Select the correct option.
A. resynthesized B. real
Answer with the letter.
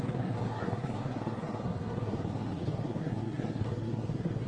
A